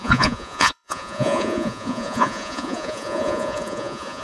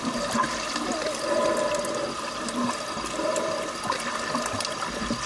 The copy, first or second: first